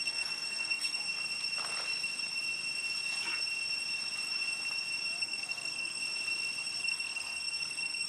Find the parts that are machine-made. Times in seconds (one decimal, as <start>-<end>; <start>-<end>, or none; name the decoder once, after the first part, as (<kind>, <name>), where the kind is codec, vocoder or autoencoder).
0.0-1.0 (codec, SNAC); 5.2-6.0; 6.8-8.1